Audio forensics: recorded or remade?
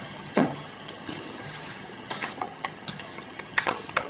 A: remade